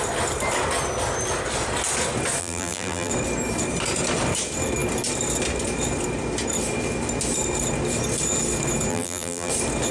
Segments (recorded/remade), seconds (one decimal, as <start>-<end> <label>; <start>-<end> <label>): 0.0-2.4 recorded; 2.4-3.1 remade; 3.1-8.9 recorded; 8.9-9.5 remade; 9.5-9.9 recorded